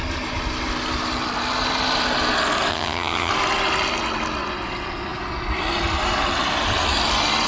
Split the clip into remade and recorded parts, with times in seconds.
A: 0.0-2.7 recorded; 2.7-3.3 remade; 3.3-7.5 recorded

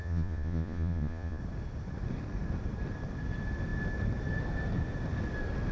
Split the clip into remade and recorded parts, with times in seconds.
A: 0.0-1.4 remade; 1.4-5.7 recorded

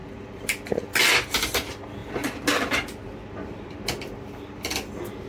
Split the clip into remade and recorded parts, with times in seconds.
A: 0.0-5.3 recorded

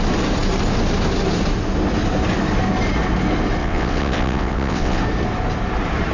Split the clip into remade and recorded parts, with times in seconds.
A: 0.0-3.6 recorded; 3.6-5.0 remade; 5.0-6.1 recorded

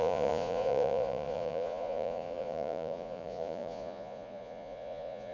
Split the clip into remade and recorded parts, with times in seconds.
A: 0.0-5.3 remade

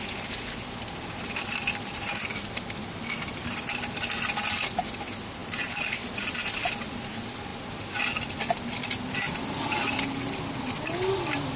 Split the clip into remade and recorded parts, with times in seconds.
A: 0.0-11.6 recorded

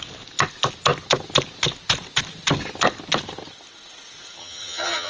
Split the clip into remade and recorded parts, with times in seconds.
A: 0.0-4.4 recorded; 4.4-5.1 remade